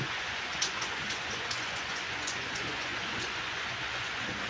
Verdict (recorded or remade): remade